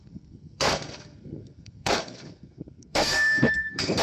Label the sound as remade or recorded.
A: remade